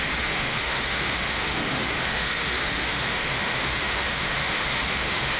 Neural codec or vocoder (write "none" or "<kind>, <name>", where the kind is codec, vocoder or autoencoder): autoencoder, DAC-VAE